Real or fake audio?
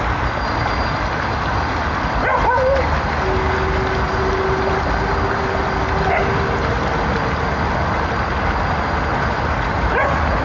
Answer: real